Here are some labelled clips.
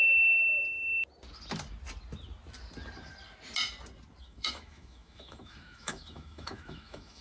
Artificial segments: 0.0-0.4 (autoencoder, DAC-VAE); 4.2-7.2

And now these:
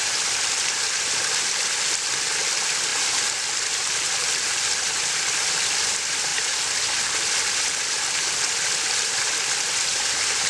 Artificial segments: 0.0-2.9 (vocoder, BigVGAN v2); 3.7-10.5

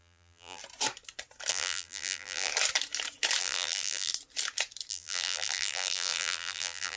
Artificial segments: 0.0-0.6 (vocoder, BigVGAN v2); 1.5-2.5; 3.4-4.1; 4.9-7.0